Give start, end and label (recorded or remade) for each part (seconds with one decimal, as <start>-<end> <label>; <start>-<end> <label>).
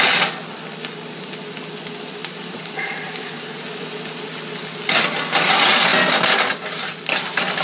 0.0-2.2 recorded; 2.2-3.6 remade; 3.6-7.6 recorded